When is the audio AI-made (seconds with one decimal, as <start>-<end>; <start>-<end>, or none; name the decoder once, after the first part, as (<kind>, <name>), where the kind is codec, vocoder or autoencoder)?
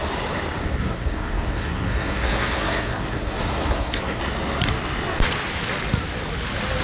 0.6-4.2 (codec, SNAC)